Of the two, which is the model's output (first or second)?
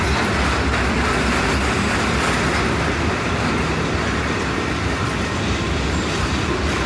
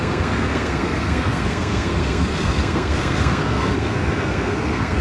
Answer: second